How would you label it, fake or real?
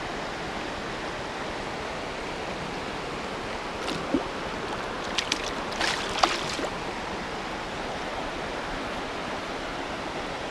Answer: real